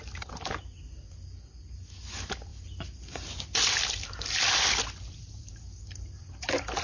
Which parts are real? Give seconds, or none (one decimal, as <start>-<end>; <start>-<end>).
0.0-6.8